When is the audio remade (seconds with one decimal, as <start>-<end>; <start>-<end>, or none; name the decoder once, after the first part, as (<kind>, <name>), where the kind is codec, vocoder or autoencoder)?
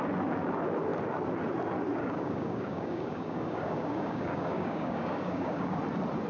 2.0-5.8 (codec, DAC)